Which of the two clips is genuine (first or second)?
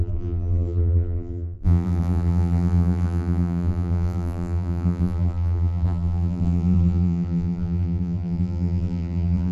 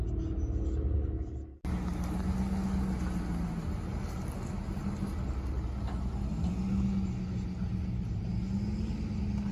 second